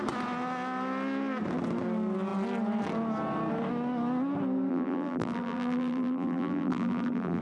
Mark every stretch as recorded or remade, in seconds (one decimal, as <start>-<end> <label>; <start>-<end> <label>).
0.0-4.7 recorded; 4.7-7.4 remade